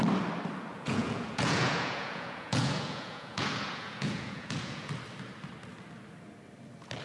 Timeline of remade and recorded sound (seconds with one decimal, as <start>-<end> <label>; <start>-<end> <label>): 0.0-0.7 recorded; 0.7-4.9 remade; 4.9-7.0 recorded

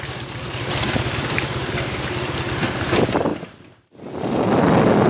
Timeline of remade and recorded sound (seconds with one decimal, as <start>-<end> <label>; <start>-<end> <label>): 0.0-0.7 recorded; 0.7-2.7 remade; 2.7-5.1 recorded